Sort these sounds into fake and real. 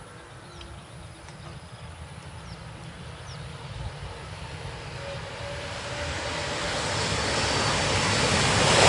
real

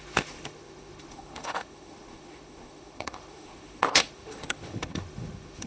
fake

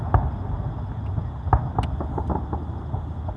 real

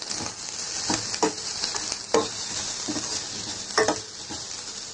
real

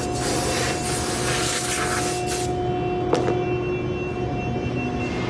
real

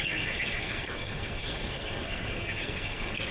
fake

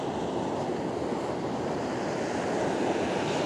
real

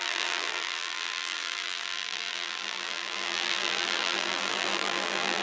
fake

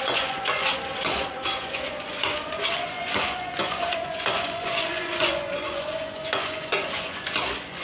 fake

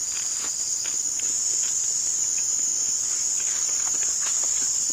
real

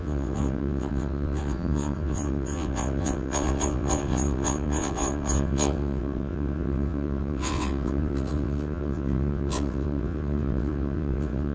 fake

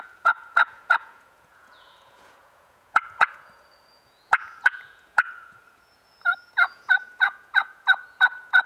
fake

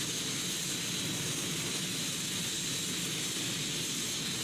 real